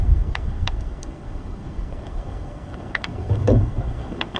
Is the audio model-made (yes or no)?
yes